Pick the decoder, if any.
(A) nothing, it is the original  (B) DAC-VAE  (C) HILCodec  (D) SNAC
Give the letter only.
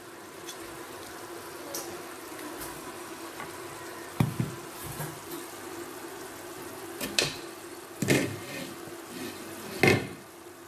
A